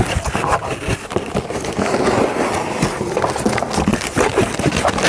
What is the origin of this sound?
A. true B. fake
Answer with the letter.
A